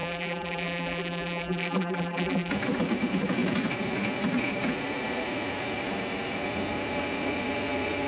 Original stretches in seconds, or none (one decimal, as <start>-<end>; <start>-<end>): 2.5-8.1